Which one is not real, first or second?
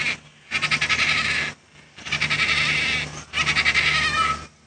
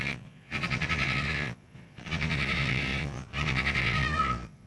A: second